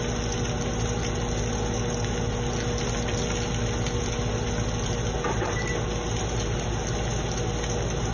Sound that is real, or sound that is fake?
real